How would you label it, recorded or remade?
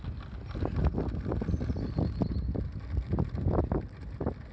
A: recorded